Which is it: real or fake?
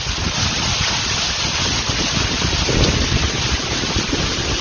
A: real